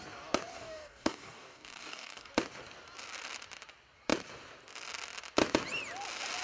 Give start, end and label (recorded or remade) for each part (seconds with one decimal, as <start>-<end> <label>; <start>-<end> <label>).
0.0-0.5 recorded; 0.5-2.3 remade; 2.3-6.4 recorded